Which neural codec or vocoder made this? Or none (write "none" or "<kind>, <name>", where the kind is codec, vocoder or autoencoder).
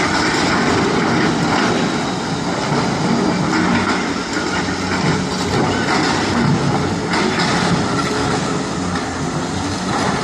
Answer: none